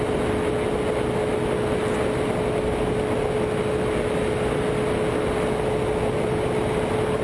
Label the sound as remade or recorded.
recorded